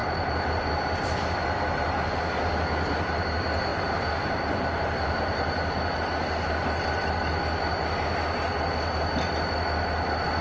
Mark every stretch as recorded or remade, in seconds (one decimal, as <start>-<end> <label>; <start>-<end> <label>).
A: 0.0-2.5 remade; 2.5-3.7 recorded; 3.7-6.0 remade; 6.0-10.4 recorded